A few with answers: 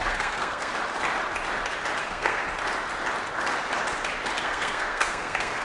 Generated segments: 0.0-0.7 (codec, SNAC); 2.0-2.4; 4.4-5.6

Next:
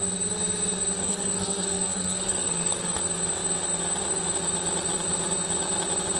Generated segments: 1.0-3.0 (codec, SNAC)